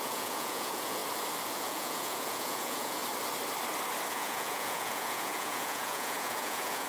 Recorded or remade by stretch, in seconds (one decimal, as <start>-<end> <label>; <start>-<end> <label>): 0.0-1.0 remade; 1.0-1.5 recorded; 1.5-3.0 remade; 3.0-4.1 recorded; 4.1-6.9 remade